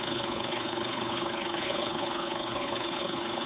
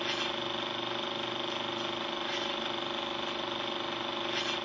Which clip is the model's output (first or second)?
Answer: first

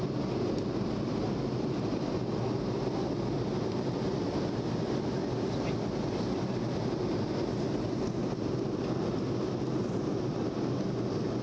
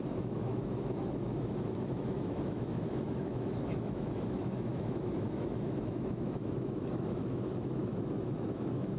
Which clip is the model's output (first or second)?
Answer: second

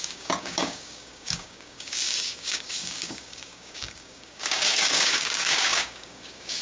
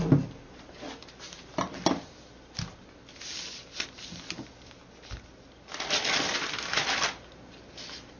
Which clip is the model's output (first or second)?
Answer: first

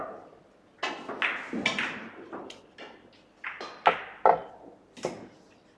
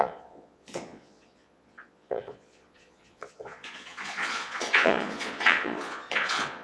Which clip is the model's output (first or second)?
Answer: second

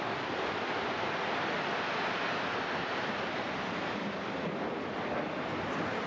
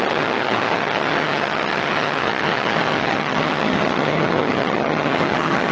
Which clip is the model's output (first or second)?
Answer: second